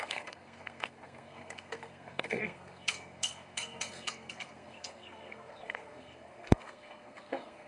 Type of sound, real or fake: fake